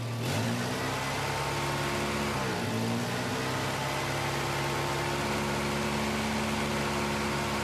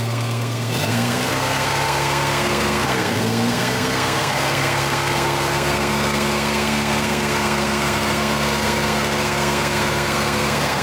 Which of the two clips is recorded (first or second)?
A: first